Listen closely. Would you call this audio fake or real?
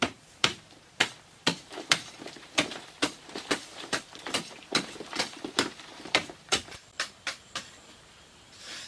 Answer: fake